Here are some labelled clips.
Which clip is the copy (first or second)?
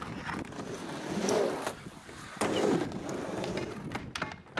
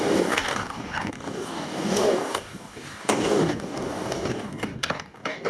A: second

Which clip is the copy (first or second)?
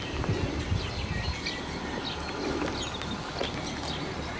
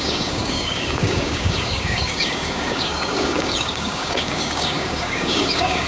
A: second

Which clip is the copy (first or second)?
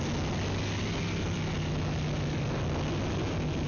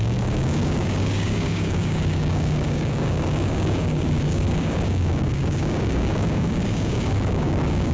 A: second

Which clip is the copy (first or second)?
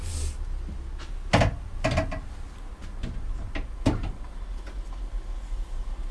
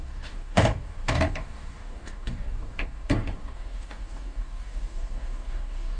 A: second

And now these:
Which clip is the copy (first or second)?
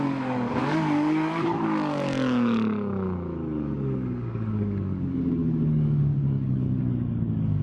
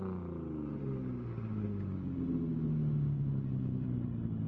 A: first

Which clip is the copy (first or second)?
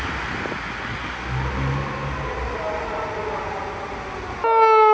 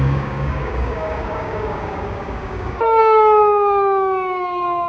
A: second